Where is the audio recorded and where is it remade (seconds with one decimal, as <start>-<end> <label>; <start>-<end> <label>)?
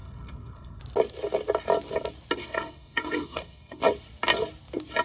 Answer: 0.0-0.8 remade; 0.8-2.4 recorded; 2.4-3.8 remade; 3.8-5.0 recorded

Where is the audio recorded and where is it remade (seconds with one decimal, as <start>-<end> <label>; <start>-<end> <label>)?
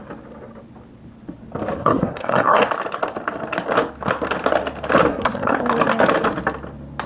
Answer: 0.0-1.8 recorded; 1.8-2.7 remade; 2.7-5.1 recorded; 5.1-5.6 remade; 5.6-7.1 recorded